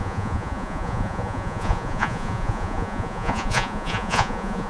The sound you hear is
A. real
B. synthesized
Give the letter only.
B